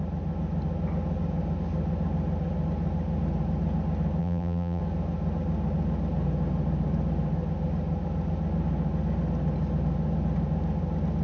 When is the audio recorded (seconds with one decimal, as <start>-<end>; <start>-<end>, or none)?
0.0-4.2; 4.8-11.2